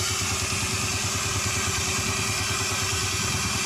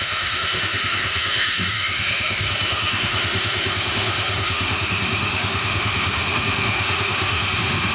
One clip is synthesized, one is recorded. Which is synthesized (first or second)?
second